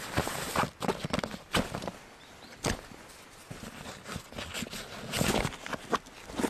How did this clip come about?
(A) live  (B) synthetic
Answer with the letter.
A